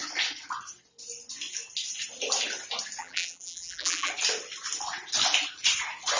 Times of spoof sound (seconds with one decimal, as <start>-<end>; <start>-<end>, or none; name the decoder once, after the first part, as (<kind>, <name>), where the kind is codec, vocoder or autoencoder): 3.0-4.1 (vocoder, BigVGAN v2)